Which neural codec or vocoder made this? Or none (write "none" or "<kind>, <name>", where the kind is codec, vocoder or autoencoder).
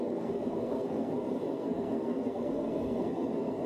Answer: codec, SNAC